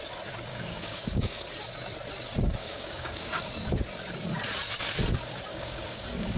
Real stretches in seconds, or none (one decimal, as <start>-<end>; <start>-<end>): 0.0-0.5; 1.4-2.6; 3.5-5.5